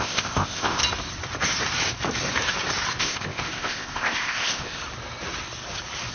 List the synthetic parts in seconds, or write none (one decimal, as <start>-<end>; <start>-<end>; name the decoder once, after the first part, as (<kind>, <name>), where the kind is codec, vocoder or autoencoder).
0.0-0.8 (codec, ZipCodec); 3.0-4.8